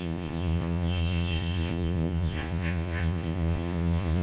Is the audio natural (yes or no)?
no